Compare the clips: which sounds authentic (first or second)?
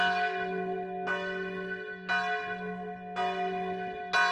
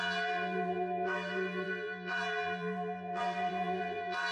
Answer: first